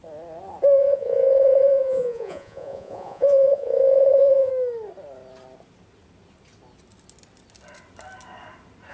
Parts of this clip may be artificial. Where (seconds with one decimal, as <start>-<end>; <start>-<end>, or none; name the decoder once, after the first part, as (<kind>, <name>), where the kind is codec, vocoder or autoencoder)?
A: 0.8-4.5 (vocoder, Vocos)